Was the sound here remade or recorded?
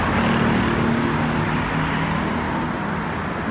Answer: recorded